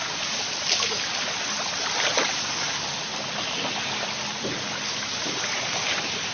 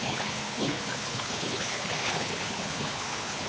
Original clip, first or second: first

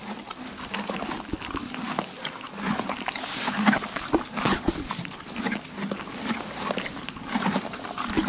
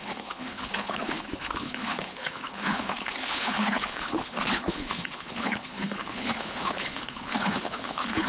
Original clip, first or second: first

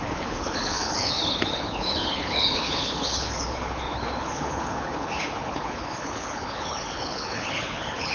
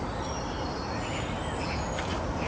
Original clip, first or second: second